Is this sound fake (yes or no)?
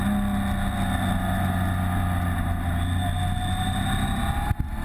no